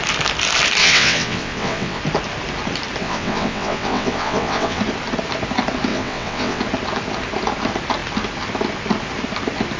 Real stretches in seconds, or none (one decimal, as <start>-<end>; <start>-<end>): 0.0-0.8; 2.0-3.0; 4.8-5.9; 6.6-9.8